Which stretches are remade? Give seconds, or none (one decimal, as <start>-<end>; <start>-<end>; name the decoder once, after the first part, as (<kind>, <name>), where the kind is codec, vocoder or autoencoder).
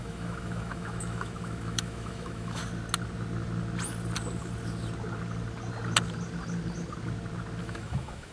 0.0-2.6 (autoencoder, DAC-VAE); 7.6-8.3